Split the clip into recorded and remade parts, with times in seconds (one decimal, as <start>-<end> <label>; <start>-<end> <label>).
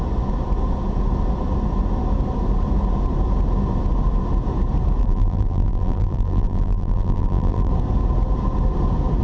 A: 0.0-5.0 recorded; 5.0-7.7 remade; 7.7-9.2 recorded